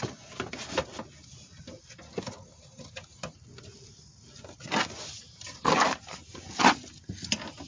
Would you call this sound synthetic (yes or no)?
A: no